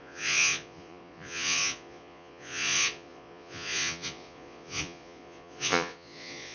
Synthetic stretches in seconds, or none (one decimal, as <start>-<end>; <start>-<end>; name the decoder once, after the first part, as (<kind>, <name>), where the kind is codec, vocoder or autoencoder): 0.0-6.5 (vocoder, Vocos)